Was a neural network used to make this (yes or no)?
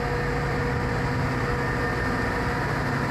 no